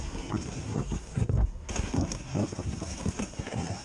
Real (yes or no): no